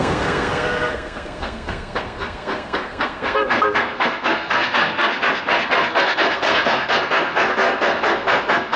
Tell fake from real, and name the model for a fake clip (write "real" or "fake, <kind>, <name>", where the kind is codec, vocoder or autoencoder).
fake, codec, SNAC